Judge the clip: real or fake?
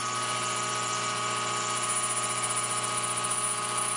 real